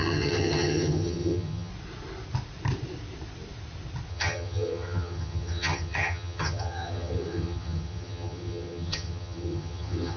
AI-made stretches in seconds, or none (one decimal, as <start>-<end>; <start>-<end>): 0.0-1.7; 4.1-10.2